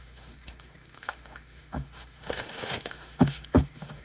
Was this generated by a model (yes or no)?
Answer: yes